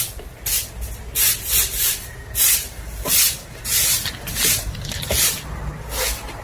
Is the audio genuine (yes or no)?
yes